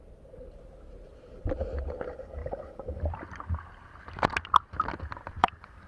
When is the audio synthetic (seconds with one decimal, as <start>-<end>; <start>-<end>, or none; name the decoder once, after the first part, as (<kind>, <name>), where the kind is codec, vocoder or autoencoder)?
2.4-3.0 (vocoder, BigVGAN v2); 5.4-5.9